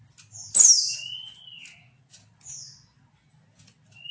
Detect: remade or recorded recorded